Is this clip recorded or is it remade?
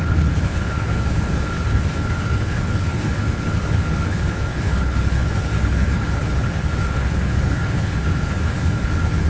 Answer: remade